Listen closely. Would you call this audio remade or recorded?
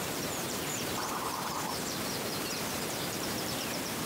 remade